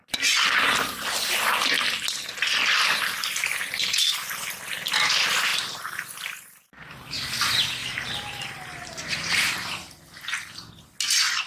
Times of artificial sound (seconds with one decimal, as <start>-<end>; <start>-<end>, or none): 3.4-4.6; 7.8-9.5